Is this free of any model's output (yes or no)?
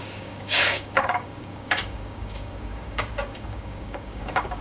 no